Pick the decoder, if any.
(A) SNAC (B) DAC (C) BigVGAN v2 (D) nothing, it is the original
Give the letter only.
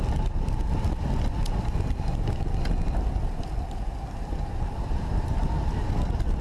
D